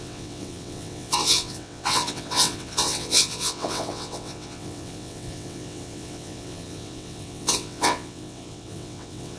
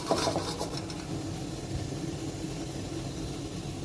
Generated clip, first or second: first